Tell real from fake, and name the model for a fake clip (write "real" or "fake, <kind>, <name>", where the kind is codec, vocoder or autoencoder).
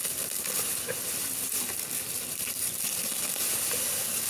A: real